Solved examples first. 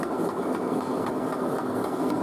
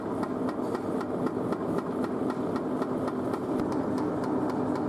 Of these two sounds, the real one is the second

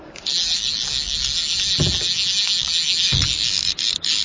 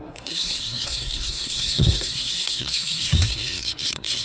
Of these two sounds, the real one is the first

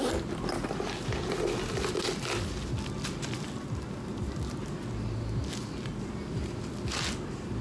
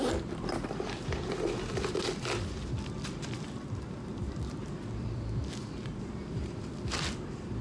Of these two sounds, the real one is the first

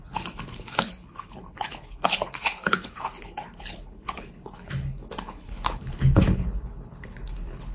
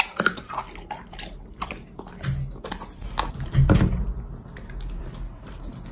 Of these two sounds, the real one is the second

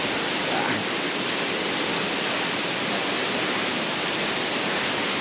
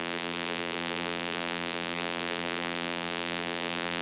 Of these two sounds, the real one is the first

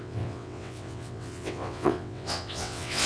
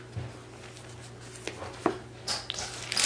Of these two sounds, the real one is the second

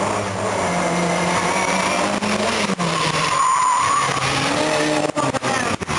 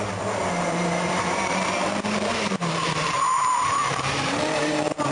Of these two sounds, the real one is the first